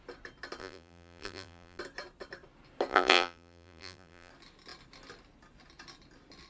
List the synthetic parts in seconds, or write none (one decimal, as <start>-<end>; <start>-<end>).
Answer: 0.6-1.8; 2.9-4.3